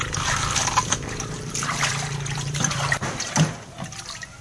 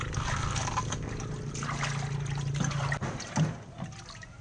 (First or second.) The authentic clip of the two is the second